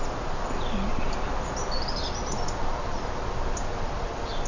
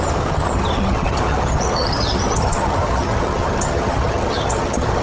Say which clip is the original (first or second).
first